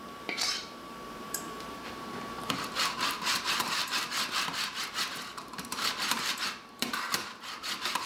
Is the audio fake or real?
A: fake